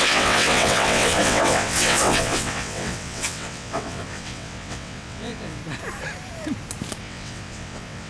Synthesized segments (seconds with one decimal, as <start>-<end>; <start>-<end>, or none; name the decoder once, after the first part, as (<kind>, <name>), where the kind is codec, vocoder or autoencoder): 0.0-5.6 (vocoder, WaveNeXt); 7.0-8.1